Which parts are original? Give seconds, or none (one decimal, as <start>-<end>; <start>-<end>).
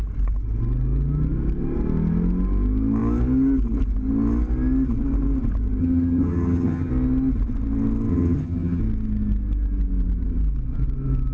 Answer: 0.0-5.8; 6.9-8.1; 8.8-11.3